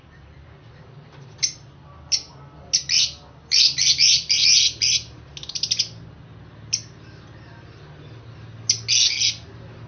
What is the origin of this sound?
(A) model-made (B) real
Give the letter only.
B